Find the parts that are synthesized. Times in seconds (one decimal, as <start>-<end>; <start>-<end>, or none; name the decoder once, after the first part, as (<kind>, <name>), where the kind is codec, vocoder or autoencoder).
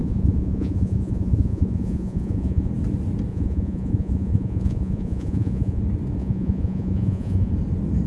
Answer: 0.0-2.7 (vocoder, Vocos); 3.3-5.8; 6.2-7.5